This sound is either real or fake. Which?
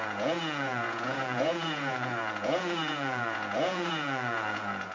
fake